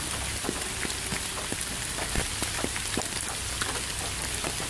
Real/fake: real